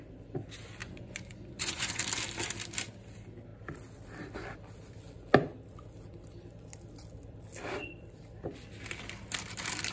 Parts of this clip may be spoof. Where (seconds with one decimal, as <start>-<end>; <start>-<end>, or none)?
0.8-2.0